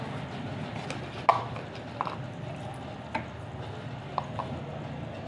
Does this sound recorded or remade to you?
recorded